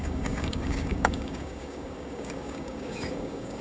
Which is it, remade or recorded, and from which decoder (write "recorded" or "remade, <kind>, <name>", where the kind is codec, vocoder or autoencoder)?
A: remade, codec, DAC